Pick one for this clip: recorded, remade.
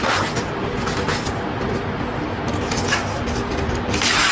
recorded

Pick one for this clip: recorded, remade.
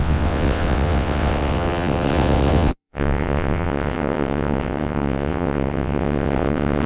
remade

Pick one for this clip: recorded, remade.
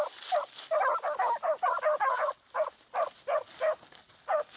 recorded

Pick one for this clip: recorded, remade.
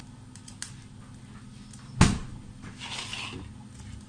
recorded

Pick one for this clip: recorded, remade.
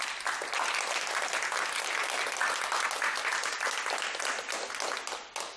recorded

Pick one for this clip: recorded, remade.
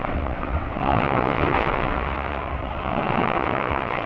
remade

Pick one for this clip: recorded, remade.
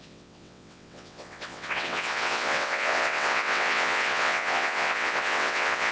remade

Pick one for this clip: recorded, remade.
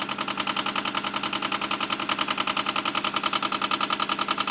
recorded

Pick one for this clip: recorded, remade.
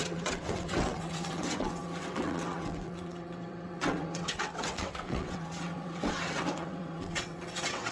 remade